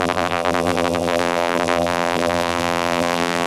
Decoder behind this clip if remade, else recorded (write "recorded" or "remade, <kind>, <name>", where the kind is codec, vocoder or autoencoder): remade, vocoder, BigVGAN v2